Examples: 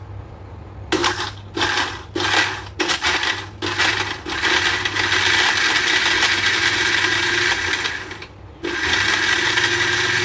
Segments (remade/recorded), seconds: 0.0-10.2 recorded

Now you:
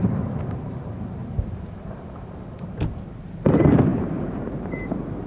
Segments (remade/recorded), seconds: 0.0-1.2 remade; 1.2-1.7 recorded; 1.7-5.3 remade